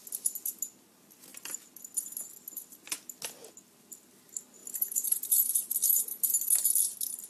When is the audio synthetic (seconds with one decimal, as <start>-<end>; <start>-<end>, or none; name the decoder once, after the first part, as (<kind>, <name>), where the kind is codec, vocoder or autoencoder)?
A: 4.6-6.0 (vocoder, BigVGAN v2)